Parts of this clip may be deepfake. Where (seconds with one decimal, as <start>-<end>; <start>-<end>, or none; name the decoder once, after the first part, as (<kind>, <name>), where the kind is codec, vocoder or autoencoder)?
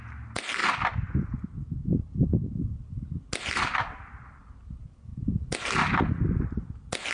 none